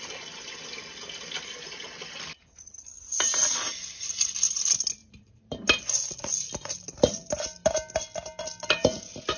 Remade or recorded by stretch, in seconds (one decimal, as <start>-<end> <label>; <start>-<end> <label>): 0.0-5.0 recorded; 5.0-5.8 remade; 5.8-9.4 recorded